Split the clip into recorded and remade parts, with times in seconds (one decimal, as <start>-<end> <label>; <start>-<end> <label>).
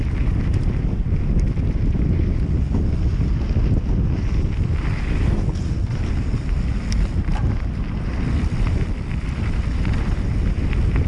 0.0-11.1 remade